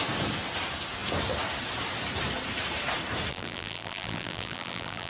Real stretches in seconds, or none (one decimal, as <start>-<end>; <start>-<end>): 0.0-3.3